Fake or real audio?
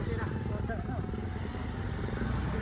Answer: real